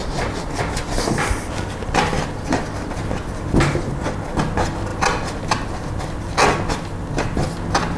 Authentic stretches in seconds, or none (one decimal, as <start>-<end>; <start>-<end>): 0.0-4.9; 6.0-8.0